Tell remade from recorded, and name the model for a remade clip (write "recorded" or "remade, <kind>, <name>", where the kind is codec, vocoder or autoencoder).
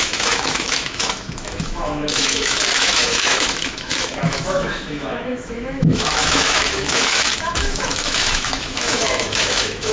remade, autoencoder, DAC-VAE